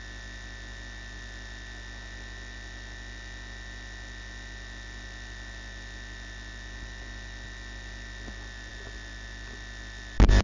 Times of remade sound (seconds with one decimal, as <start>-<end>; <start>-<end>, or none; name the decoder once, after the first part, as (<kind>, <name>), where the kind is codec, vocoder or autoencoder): none